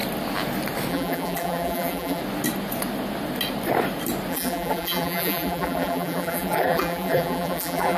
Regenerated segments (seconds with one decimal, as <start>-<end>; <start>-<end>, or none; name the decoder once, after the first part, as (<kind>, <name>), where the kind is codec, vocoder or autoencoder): 0.9-2.2 (vocoder, BigVGAN v2); 4.3-8.0